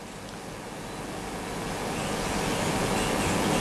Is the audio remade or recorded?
recorded